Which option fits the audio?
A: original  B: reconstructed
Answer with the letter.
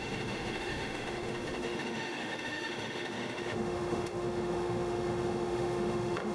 B